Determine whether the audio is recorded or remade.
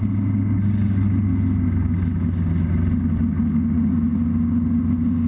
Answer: recorded